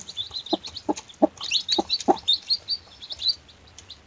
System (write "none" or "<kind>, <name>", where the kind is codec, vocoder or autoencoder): none